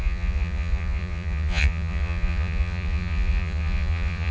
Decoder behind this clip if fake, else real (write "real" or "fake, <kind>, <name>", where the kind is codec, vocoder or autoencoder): fake, vocoder, Vocos